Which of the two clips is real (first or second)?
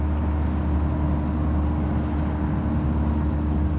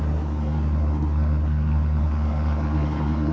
first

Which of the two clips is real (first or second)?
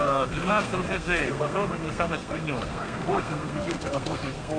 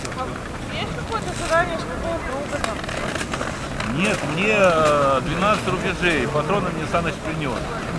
second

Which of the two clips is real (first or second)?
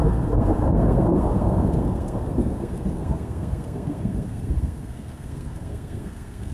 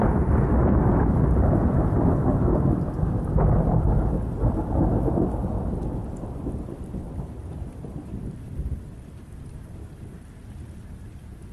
second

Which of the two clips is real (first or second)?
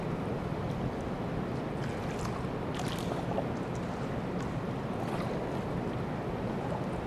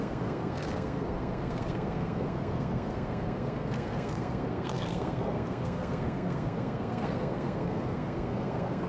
first